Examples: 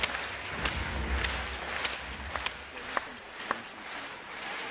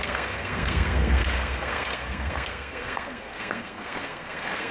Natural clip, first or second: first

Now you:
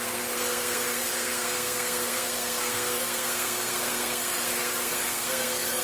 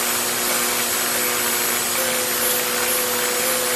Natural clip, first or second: second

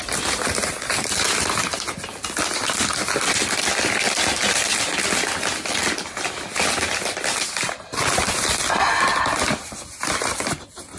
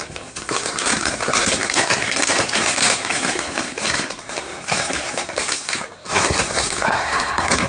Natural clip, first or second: first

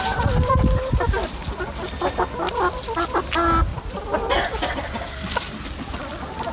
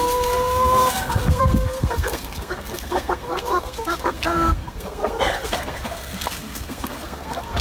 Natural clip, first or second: first